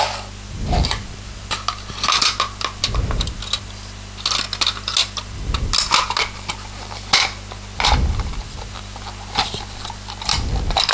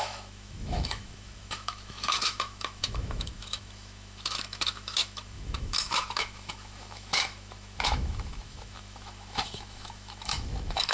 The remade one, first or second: second